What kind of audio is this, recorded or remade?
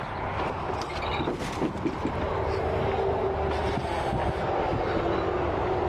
recorded